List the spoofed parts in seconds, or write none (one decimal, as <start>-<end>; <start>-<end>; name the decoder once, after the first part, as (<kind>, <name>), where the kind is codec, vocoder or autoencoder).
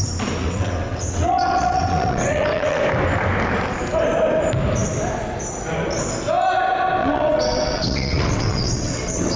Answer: 0.4-2.8 (vocoder, WaveNeXt); 7.0-9.4